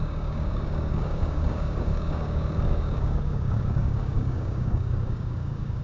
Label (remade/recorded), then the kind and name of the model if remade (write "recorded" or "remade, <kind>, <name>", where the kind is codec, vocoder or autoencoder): remade, codec, DAC